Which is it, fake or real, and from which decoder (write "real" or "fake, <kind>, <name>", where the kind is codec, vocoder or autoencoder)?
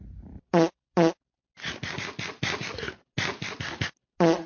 real